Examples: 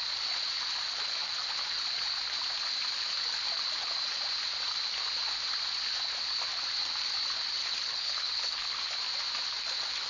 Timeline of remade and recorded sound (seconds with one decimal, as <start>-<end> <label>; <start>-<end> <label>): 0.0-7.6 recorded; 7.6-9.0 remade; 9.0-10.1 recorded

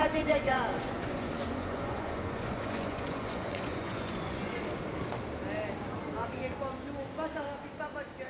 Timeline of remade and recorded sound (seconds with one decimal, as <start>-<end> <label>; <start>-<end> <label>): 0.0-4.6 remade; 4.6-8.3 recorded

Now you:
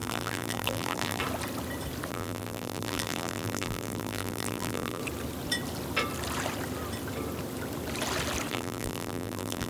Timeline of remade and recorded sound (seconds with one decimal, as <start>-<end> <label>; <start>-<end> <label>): 0.0-1.2 remade; 1.2-2.1 recorded; 2.1-5.0 remade; 5.0-8.5 recorded; 8.5-9.7 remade

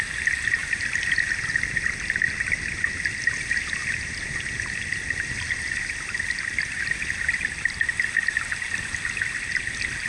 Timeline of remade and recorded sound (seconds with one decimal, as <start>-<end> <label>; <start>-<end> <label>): 0.0-10.1 recorded

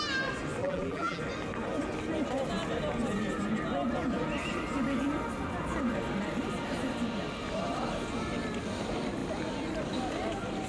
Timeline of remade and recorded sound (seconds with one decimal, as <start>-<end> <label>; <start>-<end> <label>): 0.0-0.6 recorded; 0.6-1.2 remade; 1.2-10.7 recorded